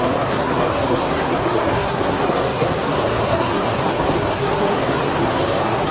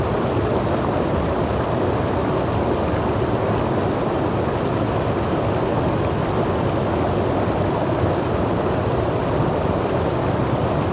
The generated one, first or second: first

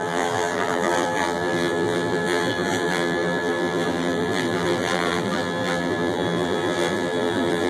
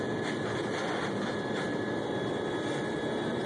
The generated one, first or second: first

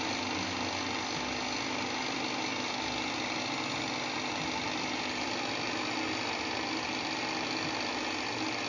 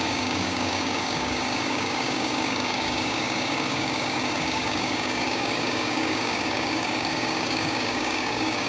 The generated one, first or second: second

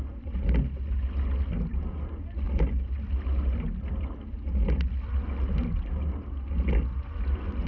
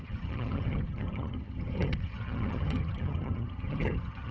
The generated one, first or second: second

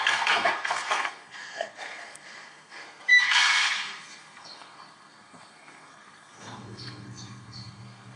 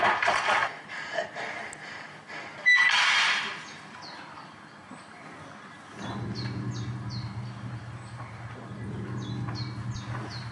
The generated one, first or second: first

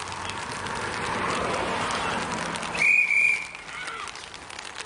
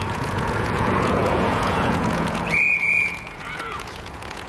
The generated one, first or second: second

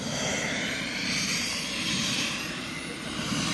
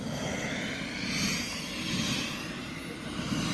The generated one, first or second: first